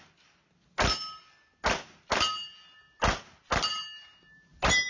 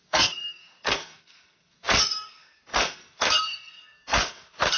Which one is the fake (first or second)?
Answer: second